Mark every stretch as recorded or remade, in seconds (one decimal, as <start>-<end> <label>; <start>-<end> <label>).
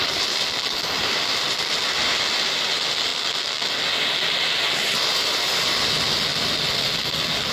0.0-3.1 remade; 3.1-4.8 recorded; 4.8-6.3 remade; 6.3-7.5 recorded